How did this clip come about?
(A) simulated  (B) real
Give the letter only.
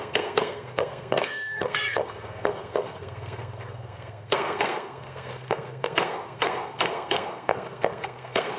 A